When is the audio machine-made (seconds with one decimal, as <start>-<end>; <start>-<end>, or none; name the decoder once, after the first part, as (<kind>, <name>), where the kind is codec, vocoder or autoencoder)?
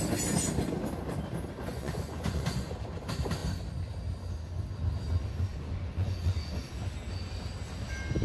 1.7-2.7 (vocoder, Vocos); 5.5-6.7